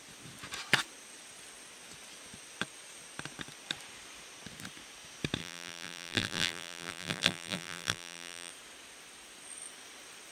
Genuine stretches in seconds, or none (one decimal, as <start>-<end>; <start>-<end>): 0.0-5.4; 8.5-10.3